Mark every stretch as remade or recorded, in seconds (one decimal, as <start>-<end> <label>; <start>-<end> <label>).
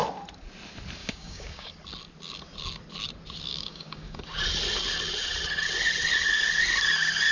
0.0-1.0 recorded; 1.0-1.7 remade; 1.7-3.5 recorded; 3.5-4.2 remade; 4.2-7.3 recorded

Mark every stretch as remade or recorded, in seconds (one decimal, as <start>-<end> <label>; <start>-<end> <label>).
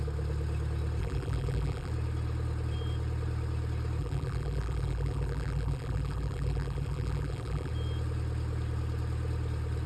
0.0-1.0 recorded; 1.0-1.9 remade; 1.9-4.0 recorded; 4.0-7.7 remade; 7.7-9.9 recorded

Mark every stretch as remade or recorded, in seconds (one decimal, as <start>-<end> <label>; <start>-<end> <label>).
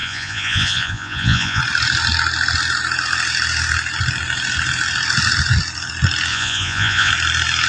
0.0-1.6 remade; 1.6-6.3 recorded; 6.3-7.1 remade; 7.1-7.7 recorded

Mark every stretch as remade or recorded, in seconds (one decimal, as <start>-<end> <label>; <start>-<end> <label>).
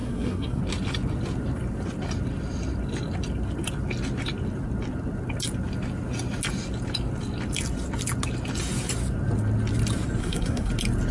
0.0-0.6 remade; 0.6-10.2 recorded; 10.2-10.7 remade; 10.7-11.1 recorded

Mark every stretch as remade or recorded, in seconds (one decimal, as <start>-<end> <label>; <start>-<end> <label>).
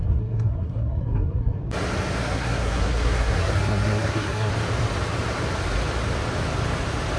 0.0-1.6 remade; 1.6-2.2 recorded; 2.2-4.5 remade; 4.5-7.2 recorded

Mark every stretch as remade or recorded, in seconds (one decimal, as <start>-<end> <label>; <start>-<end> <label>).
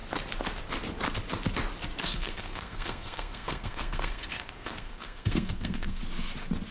0.0-2.0 recorded; 2.0-6.0 remade; 6.0-6.7 recorded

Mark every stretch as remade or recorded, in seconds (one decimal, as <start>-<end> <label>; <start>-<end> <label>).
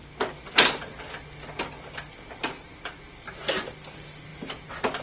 0.0-5.0 recorded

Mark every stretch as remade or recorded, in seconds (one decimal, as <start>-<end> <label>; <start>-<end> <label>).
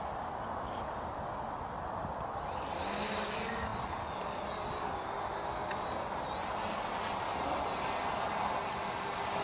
0.0-9.4 recorded